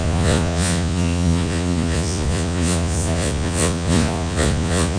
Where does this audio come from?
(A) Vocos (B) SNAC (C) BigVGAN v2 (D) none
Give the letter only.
A